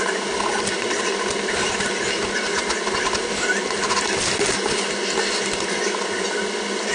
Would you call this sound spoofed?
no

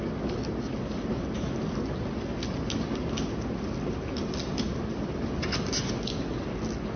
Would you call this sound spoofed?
no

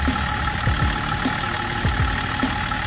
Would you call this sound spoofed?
no